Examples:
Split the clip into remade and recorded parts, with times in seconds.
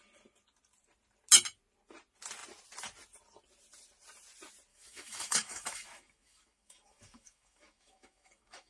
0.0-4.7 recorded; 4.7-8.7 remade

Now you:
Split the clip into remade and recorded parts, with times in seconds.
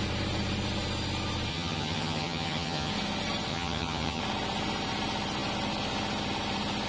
0.0-1.5 recorded; 1.5-2.9 remade; 2.9-3.5 recorded; 3.5-4.2 remade; 4.2-6.9 recorded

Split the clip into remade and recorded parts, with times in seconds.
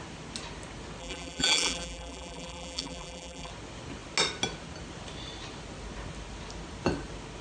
0.0-1.0 recorded; 1.0-3.5 remade; 3.5-7.4 recorded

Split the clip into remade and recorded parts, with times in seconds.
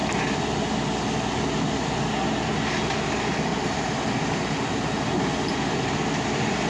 0.0-1.0 remade; 1.0-3.5 recorded; 3.5-5.0 remade; 5.0-6.7 recorded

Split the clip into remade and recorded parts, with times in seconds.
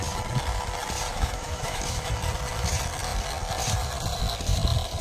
0.0-1.1 recorded; 1.1-2.1 remade; 2.1-5.0 recorded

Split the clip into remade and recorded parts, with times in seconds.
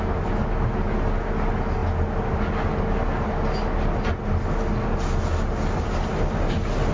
0.0-6.9 recorded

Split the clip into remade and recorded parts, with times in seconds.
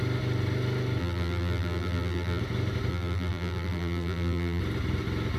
0.0-1.0 recorded; 1.0-2.4 remade; 2.4-2.9 recorded; 2.9-4.6 remade; 4.6-5.4 recorded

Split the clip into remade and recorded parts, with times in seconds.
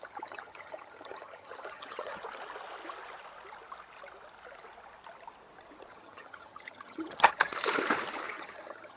0.0-2.2 remade; 2.2-5.9 recorded; 5.9-7.5 remade; 7.5-8.3 recorded; 8.3-9.0 remade